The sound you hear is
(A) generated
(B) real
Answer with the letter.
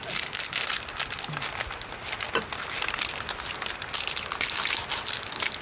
B